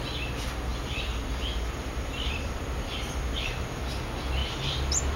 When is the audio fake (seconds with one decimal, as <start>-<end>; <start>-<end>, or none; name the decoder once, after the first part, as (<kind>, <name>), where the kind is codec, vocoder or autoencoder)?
0.7-3.8 (vocoder, BigVGAN v2); 4.4-5.2